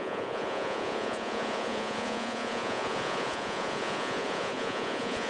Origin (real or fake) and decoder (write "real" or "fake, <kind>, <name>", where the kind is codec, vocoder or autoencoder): fake, vocoder, Vocos